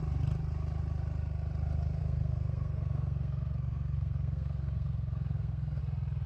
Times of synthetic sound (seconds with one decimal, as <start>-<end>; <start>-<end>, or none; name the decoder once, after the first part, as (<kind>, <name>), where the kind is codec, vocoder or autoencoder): 2.0-5.8 (codec, SNAC)